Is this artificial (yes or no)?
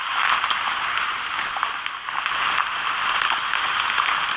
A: no